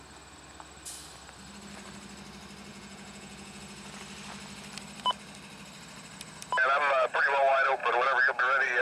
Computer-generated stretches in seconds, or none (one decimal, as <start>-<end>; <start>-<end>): 2.7-3.6

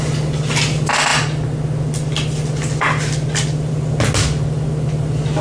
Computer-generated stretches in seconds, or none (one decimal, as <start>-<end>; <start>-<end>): none